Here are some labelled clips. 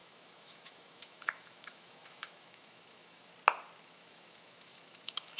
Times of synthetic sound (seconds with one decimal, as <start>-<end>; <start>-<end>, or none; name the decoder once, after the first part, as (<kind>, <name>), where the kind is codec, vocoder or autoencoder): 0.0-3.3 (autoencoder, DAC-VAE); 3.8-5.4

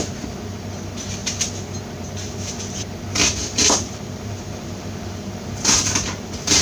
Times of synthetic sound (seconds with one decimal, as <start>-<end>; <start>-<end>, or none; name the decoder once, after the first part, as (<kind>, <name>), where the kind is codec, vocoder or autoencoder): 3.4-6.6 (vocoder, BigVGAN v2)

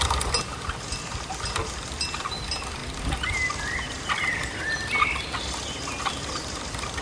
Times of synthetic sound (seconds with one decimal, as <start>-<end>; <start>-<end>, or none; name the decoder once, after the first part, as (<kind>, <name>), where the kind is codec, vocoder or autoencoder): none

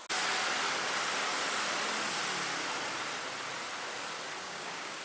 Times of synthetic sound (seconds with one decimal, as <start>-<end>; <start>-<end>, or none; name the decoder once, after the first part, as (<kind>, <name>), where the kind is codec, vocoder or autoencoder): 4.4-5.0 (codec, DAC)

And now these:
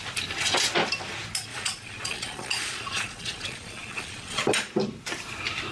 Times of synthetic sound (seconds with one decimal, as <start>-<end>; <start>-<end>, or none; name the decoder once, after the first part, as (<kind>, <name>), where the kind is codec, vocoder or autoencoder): 1.5-4.4 (vocoder, Vocos)